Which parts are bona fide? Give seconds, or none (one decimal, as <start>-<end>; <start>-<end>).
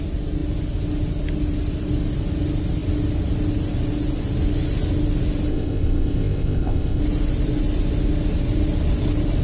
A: 0.0-5.5; 7.0-9.4